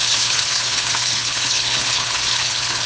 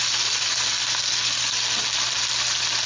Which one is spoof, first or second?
first